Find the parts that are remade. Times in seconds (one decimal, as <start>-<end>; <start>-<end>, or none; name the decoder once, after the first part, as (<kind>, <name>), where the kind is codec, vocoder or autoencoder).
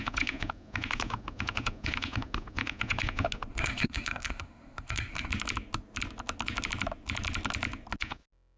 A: 3.5-5.3 (codec, SNAC)